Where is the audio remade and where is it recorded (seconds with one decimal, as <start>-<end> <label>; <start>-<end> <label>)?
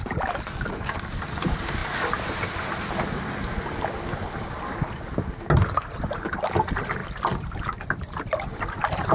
0.0-9.1 recorded